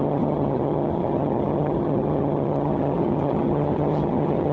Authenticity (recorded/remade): remade